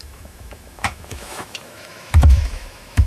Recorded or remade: remade